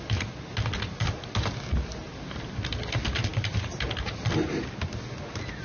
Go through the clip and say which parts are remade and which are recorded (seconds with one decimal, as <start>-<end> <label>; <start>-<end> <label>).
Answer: 0.0-5.6 recorded